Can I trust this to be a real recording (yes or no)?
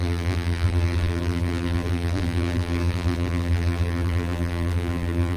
no